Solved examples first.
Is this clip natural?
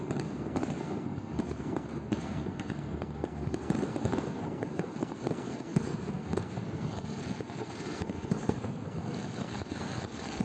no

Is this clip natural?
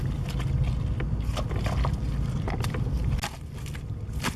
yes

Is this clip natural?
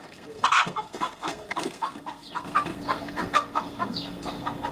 no